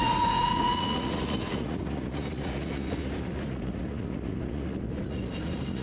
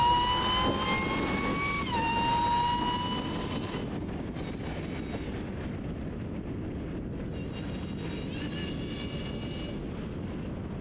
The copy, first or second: first